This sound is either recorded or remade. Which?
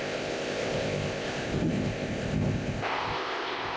remade